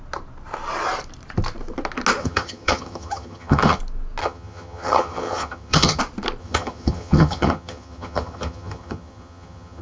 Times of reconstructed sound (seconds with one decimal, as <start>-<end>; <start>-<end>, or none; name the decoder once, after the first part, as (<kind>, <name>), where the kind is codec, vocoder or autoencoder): 2.2-3.8 (vocoder, HiFi-GAN); 4.2-6.0; 6.4-9.8